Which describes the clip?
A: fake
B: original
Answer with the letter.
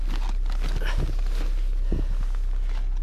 B